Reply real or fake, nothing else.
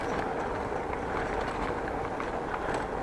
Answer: real